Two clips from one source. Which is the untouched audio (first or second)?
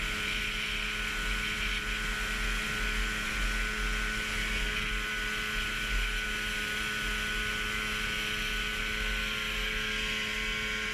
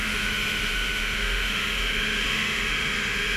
first